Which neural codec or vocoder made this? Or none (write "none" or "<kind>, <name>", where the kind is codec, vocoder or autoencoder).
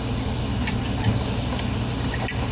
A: none